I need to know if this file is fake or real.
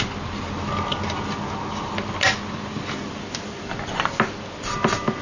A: real